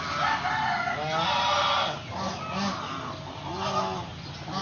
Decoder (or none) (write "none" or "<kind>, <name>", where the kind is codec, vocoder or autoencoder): none